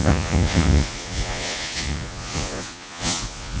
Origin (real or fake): fake